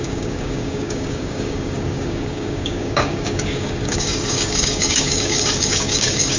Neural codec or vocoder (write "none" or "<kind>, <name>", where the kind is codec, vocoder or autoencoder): codec, DAC